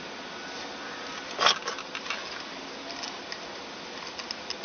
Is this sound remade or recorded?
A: recorded